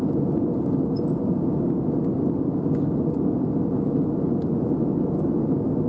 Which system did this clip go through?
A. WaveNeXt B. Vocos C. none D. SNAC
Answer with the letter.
C